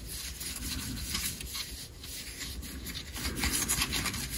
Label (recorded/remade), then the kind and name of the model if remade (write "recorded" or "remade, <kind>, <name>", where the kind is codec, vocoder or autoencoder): recorded